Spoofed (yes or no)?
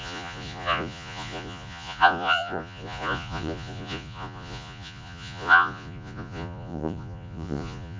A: yes